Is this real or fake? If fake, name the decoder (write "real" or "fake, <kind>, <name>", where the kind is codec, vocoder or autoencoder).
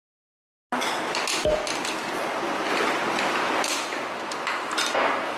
real